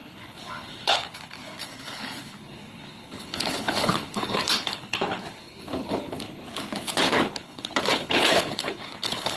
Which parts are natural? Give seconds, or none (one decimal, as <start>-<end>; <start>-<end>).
none